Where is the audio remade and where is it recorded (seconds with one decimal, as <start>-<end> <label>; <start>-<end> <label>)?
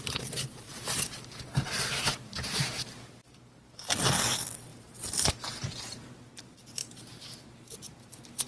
0.0-0.7 recorded; 0.7-3.9 remade; 3.9-4.7 recorded; 4.7-6.1 remade; 6.1-6.8 recorded; 6.8-8.0 remade; 8.0-8.5 recorded